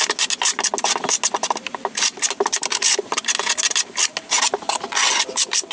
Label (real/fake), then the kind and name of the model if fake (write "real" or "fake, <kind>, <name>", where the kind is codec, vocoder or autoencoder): real